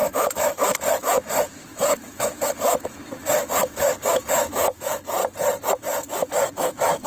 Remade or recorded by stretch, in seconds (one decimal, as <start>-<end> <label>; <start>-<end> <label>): 0.0-5.2 remade; 5.2-5.7 recorded; 5.7-7.1 remade